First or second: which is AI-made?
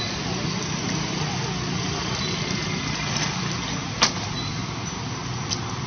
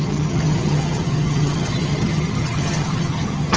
second